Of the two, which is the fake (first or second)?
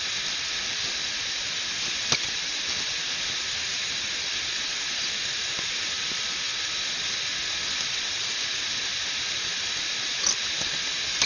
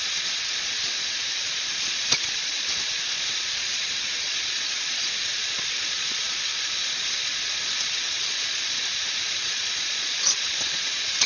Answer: second